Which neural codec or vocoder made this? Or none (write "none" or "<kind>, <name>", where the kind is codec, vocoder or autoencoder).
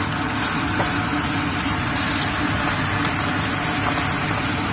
none